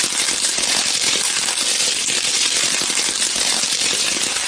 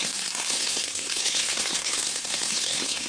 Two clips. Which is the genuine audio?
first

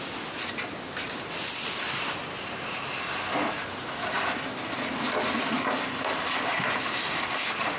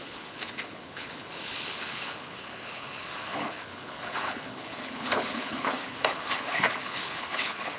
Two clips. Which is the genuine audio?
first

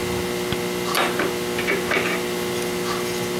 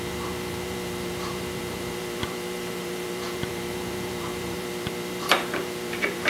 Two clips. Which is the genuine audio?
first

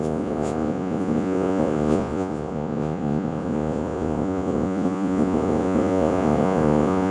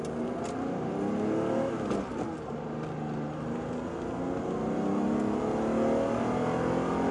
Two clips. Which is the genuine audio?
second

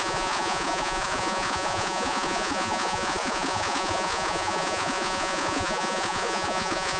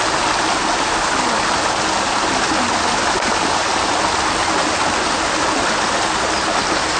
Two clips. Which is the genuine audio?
second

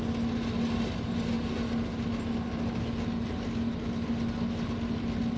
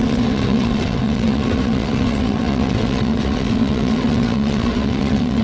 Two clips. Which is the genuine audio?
first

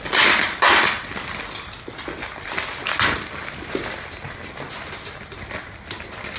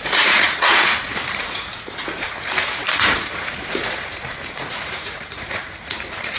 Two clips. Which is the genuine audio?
first